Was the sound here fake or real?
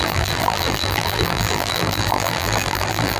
fake